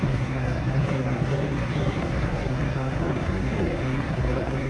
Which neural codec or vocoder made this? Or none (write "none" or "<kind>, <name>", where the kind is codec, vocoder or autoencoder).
codec, SNAC